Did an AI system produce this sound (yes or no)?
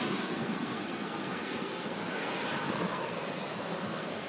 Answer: yes